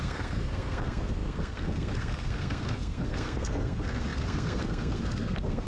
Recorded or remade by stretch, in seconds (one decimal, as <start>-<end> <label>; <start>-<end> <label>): 0.0-5.7 remade